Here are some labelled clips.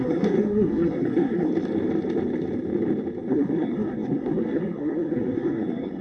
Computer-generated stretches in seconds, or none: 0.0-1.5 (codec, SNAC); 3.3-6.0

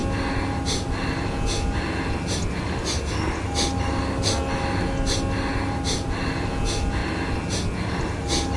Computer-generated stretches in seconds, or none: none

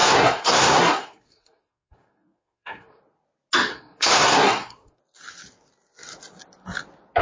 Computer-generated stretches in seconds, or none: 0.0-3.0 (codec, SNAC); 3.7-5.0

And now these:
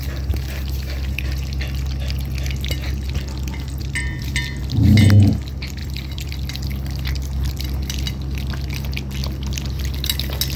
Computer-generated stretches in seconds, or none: 5.8-6.3 (vocoder, BigVGAN v2)

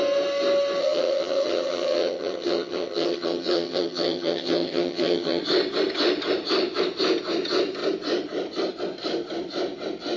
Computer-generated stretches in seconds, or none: 0.8-5.4 (vocoder, HiFi-GAN)